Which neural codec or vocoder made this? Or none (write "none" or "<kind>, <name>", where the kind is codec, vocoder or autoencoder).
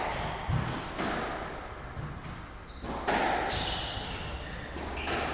none